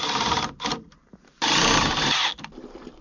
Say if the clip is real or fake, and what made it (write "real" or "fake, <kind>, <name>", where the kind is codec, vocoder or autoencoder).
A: fake, vocoder, BigVGAN v2